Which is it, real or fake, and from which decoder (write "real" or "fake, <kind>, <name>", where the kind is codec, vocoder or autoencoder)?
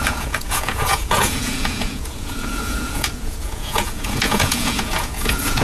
fake, vocoder, Vocos